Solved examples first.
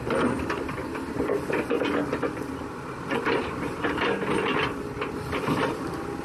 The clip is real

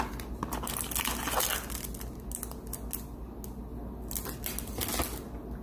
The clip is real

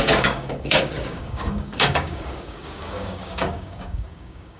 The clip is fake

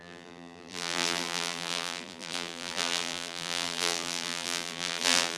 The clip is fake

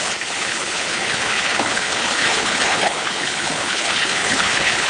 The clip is fake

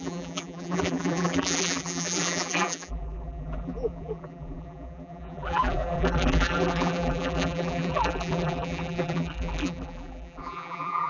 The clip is fake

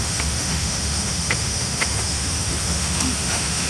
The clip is fake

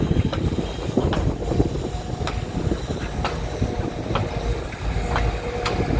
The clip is real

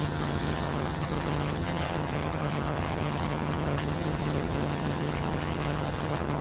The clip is fake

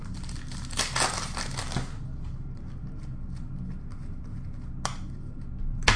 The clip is real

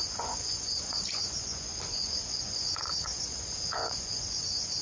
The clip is fake